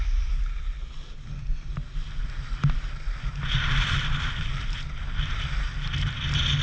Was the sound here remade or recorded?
recorded